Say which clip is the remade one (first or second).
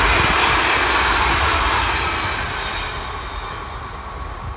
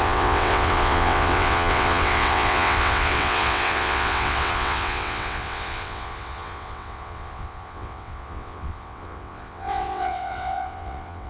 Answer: second